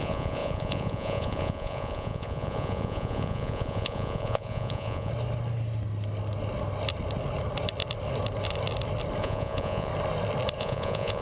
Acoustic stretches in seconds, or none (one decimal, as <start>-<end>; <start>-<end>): 5.1-9.2; 9.9-10.6